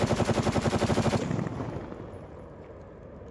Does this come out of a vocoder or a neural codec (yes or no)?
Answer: no